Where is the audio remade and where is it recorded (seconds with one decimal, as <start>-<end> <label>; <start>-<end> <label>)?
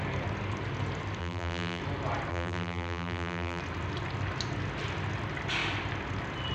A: 0.0-1.2 recorded; 1.2-1.8 remade; 1.8-2.3 recorded; 2.3-3.6 remade; 3.6-6.5 recorded